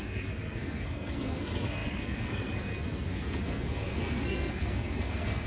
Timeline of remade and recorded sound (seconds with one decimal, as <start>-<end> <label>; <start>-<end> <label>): 0.0-5.5 remade